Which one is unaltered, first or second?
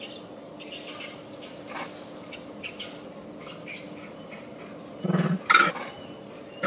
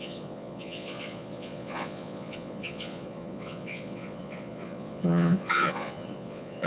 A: first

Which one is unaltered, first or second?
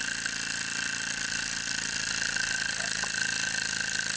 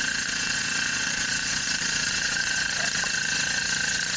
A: first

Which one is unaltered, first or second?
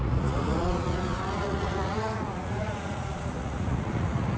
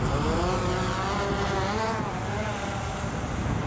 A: second